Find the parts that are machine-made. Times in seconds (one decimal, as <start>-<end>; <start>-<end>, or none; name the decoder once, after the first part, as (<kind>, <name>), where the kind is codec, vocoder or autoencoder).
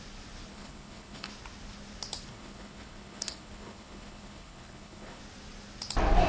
0.5-1.3 (codec, HILCodec); 2.3-5.2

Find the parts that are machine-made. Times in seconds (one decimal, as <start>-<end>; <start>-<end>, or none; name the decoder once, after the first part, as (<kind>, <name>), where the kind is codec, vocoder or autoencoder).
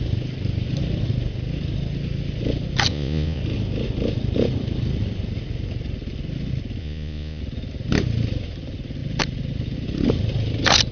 2.9-3.4 (vocoder, Vocos); 6.8-7.4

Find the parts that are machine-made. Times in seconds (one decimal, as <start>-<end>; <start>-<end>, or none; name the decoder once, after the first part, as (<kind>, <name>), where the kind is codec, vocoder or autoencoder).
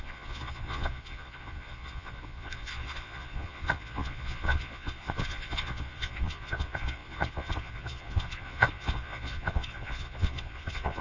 0.0-11.0 (vocoder, Vocos)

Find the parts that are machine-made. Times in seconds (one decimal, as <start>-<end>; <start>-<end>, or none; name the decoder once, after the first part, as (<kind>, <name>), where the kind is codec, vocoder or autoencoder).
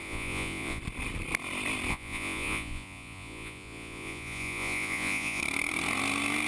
0.0-0.8 (vocoder, Vocos); 1.9-5.4